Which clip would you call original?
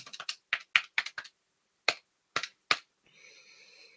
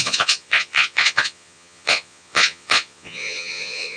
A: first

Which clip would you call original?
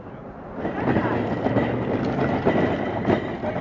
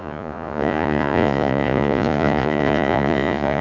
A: first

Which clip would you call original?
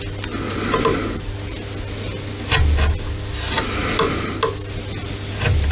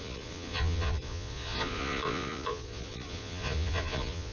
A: first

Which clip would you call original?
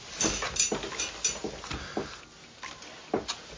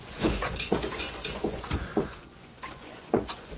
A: first